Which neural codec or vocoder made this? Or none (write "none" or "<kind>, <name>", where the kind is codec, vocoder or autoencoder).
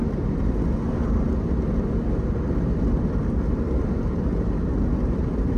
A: none